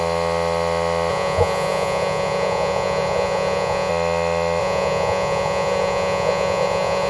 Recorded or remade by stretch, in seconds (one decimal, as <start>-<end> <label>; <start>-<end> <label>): 0.0-1.1 recorded; 1.1-3.9 remade; 3.9-4.6 recorded; 4.6-7.1 remade